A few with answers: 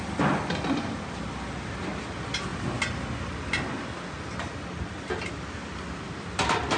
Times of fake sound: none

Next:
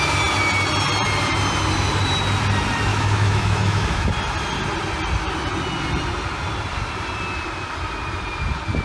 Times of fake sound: 2.9-4.1 (autoencoder, DAC-VAE)

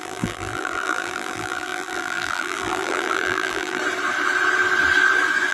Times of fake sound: 0.0-3.8 (vocoder, BigVGAN v2)

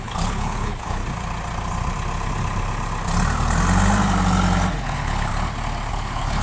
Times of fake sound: 0.0-1.0 (codec, HILCodec); 4.8-5.3; 5.9-6.4

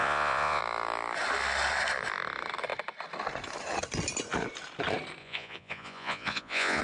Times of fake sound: 0.0-0.6 (vocoder, Vocos); 5.2-6.8

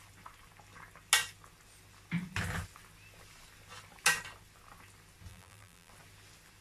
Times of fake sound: 5.3-5.9 (vocoder, BigVGAN v2)